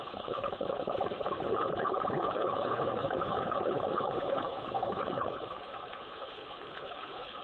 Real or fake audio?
fake